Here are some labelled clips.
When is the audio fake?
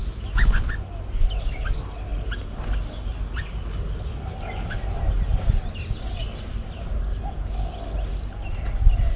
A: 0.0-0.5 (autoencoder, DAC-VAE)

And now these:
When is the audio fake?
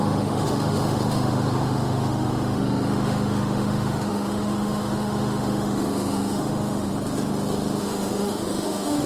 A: 0.0-6.9 (autoencoder, DAC-VAE); 7.8-9.1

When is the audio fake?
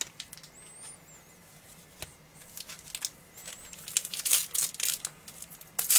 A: none